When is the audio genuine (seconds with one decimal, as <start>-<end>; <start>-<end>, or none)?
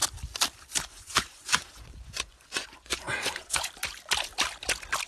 0.0-0.9; 3.7-5.1